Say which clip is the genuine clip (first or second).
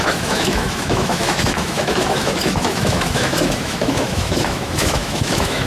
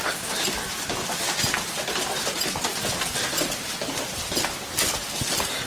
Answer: second